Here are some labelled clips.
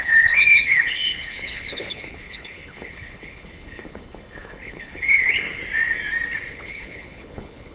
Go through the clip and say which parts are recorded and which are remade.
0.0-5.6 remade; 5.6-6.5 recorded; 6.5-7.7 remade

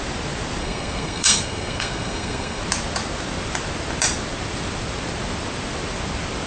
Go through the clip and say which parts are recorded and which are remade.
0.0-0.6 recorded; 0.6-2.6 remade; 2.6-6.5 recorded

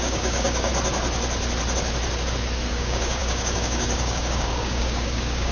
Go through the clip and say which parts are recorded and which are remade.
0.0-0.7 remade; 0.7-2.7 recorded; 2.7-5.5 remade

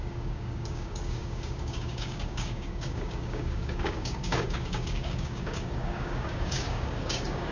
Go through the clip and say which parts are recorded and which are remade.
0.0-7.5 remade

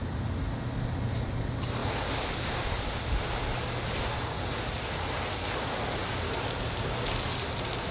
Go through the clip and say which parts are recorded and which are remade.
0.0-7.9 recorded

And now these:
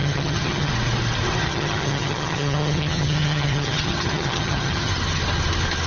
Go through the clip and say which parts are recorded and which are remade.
0.0-0.7 remade; 0.7-1.4 recorded; 1.4-4.9 remade; 4.9-5.9 recorded

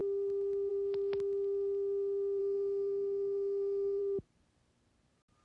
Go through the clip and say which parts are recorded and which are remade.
0.0-2.4 recorded; 2.4-4.0 remade; 4.0-5.4 recorded

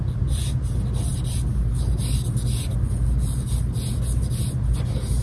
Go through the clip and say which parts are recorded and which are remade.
0.0-5.2 recorded